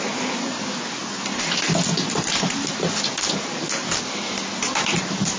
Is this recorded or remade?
recorded